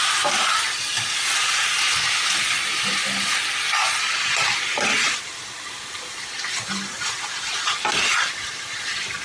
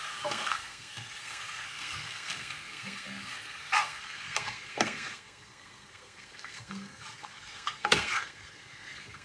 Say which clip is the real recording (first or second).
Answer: first